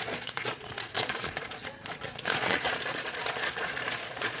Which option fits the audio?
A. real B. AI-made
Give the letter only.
B